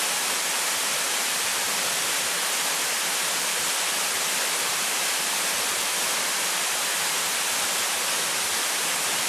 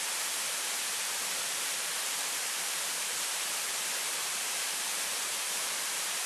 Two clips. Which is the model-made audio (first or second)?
second